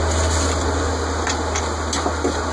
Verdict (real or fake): real